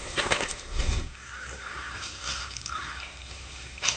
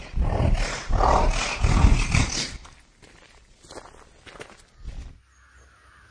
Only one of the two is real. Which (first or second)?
second